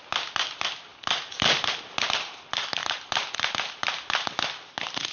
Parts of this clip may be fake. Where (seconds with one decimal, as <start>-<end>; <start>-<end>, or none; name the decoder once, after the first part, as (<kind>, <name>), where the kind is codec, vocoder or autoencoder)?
none